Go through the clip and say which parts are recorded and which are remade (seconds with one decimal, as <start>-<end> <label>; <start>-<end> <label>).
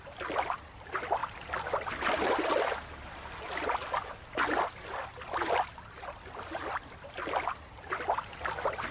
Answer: 0.0-8.9 recorded